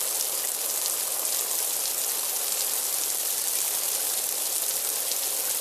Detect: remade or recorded recorded